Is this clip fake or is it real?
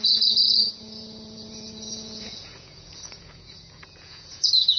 fake